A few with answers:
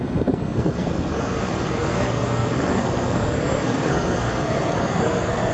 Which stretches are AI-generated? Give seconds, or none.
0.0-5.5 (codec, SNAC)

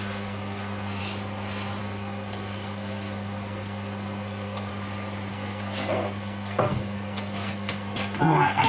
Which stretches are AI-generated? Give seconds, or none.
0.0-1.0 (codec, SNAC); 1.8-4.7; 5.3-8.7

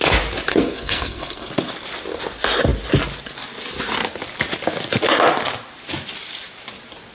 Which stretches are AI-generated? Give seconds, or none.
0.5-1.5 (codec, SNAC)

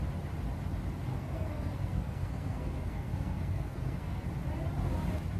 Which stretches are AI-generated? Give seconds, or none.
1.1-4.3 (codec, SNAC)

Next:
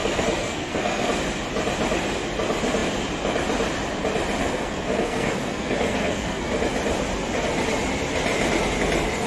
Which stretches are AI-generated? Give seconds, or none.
0.0-1.1 (codec, SNAC); 4.4-6.5

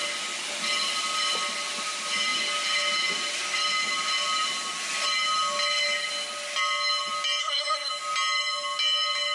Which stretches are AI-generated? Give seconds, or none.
7.4-7.9 (codec, SNAC)

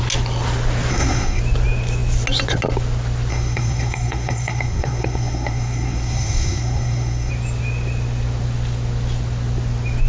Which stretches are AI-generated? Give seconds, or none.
0.9-1.4 (codec, SNAC); 3.3-7.3